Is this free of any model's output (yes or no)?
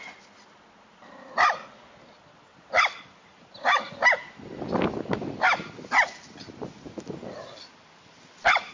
yes